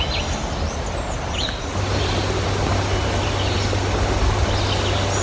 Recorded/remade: recorded